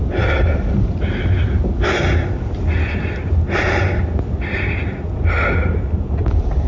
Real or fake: real